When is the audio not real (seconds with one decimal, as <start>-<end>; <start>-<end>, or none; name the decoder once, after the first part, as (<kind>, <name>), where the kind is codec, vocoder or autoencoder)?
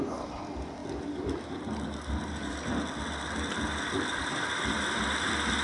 none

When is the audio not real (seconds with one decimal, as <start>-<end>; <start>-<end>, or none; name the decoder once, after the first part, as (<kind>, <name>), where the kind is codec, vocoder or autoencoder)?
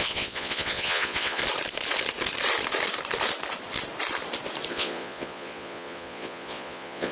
0.0-1.4 (vocoder, Vocos); 4.7-7.1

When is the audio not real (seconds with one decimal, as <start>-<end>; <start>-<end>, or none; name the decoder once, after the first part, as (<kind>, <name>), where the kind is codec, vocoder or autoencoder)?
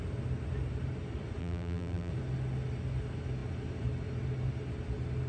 1.4-2.1 (vocoder, BigVGAN v2)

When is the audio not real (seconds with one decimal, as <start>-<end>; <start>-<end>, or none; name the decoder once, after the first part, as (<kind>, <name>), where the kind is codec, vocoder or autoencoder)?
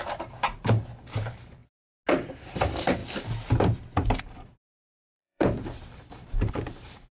0.0-1.6 (vocoder, BigVGAN v2); 2.3-3.0; 4.2-7.2